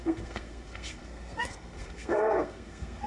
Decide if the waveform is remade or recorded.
remade